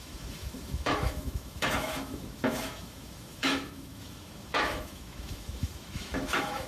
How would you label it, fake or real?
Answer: fake